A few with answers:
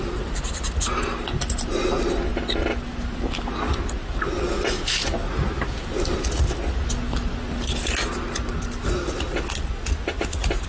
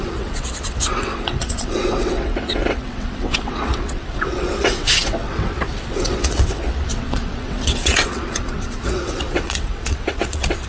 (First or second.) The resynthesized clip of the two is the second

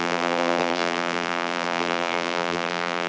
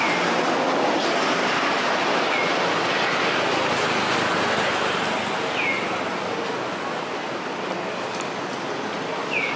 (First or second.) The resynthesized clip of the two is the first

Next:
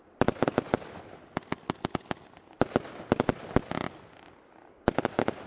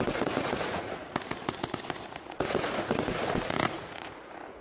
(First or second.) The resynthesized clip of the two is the second